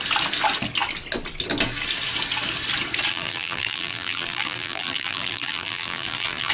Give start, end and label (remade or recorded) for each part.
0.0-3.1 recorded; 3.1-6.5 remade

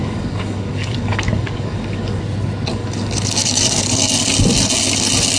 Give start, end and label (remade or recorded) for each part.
0.0-2.2 remade; 2.2-2.7 recorded; 2.7-4.2 remade; 4.2-5.4 recorded